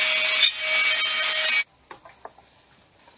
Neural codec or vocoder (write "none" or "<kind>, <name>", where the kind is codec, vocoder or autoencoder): none